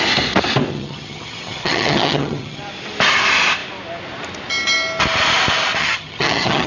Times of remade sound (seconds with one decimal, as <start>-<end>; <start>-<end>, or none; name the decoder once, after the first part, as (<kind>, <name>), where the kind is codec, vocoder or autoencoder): 0.7-2.6 (vocoder, HiFi-GAN); 5.8-6.7